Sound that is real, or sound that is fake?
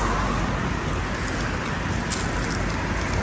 real